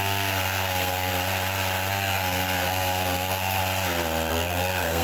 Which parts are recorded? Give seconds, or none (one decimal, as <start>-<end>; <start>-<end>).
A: 1.1-1.9; 3.6-4.3